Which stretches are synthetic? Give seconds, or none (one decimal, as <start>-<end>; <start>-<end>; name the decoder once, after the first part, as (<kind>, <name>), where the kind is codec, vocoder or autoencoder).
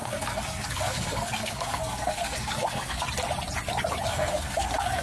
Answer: 0.0-3.0 (codec, SNAC); 4.1-5.0